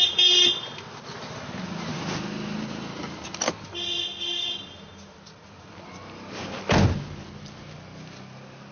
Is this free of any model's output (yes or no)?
yes